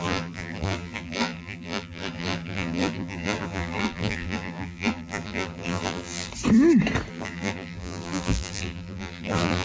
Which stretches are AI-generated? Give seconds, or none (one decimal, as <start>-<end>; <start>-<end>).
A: 0.0-6.3; 7.1-9.6

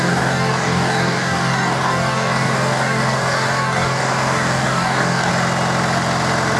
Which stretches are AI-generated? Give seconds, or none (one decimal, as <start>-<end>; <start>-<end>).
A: 0.0-5.3

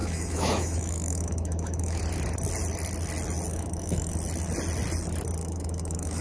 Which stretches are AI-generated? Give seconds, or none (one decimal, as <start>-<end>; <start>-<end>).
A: 0.0-2.0; 3.5-4.1; 5.4-6.2